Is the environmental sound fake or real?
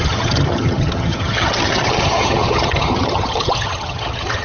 fake